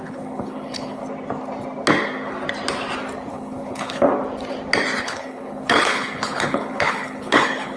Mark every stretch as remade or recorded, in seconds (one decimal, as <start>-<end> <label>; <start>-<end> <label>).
0.0-1.0 remade; 1.0-3.3 recorded; 3.3-4.1 remade; 4.1-5.0 recorded; 5.0-7.8 remade

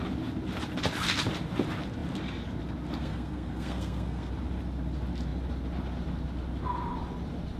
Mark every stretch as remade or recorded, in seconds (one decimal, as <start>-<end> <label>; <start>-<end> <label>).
0.0-3.0 recorded; 3.0-4.3 remade; 4.3-7.6 recorded

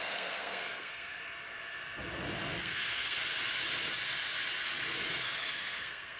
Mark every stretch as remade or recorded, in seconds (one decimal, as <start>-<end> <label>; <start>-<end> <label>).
0.0-1.2 remade; 1.2-2.6 recorded; 2.6-3.2 remade; 3.2-5.2 recorded; 5.2-6.2 remade